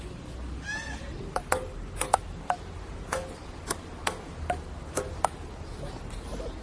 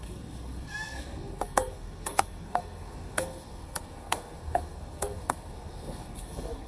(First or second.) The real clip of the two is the first